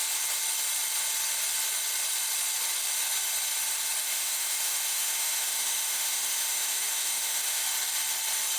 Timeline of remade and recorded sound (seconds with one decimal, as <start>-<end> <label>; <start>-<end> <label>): 0.0-4.0 recorded; 4.0-7.6 remade; 7.6-8.6 recorded